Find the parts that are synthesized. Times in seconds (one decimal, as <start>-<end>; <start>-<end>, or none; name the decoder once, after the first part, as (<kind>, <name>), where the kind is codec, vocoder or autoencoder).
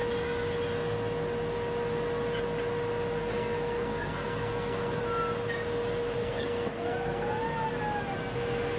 3.2-5.0 (codec, SNAC); 6.2-7.4